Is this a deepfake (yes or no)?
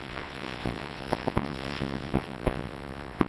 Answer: yes